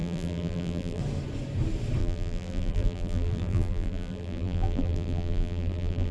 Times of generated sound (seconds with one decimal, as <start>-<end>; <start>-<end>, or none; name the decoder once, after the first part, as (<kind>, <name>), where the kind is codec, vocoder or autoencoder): 0.0-1.0 (vocoder, BigVGAN v2); 2.0-6.1